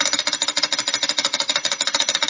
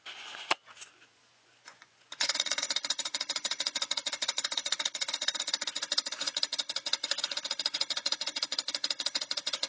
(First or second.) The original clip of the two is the first